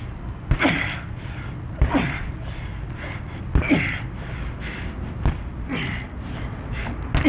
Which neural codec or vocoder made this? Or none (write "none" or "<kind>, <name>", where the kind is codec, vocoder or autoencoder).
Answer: none